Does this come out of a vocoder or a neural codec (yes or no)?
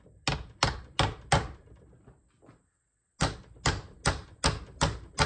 no